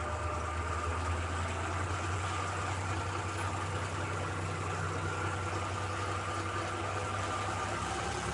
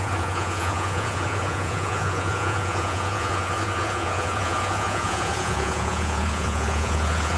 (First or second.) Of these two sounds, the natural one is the first